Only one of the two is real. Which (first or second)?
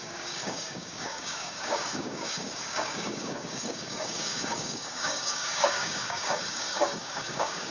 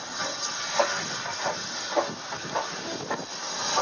second